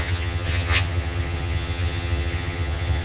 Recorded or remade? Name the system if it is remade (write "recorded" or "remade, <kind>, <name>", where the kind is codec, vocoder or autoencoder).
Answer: remade, vocoder, HiFi-GAN